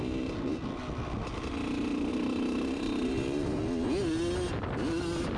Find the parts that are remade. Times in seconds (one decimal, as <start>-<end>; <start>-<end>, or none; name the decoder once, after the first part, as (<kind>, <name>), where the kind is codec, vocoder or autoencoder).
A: 2.1-3.6 (vocoder, BigVGAN v2)